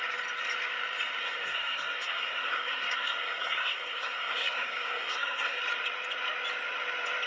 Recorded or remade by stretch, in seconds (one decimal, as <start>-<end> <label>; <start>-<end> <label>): 0.0-1.2 recorded; 1.2-5.6 remade; 5.6-7.3 recorded